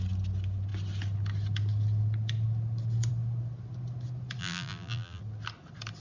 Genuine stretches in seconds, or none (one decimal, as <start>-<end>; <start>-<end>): 0.0-4.4; 5.2-6.0